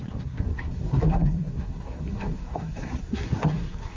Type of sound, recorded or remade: remade